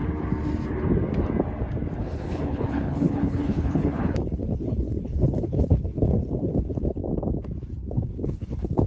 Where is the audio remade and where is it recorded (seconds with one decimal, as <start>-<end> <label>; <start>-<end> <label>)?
0.0-2.0 recorded; 2.0-7.0 remade; 7.0-7.9 recorded; 7.9-8.9 remade